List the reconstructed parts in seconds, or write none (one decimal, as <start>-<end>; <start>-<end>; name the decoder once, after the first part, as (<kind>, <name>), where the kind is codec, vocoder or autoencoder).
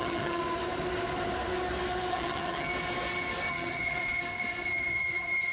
0.0-0.4 (vocoder, HiFi-GAN); 2.1-2.7; 3.5-4.2; 4.7-5.5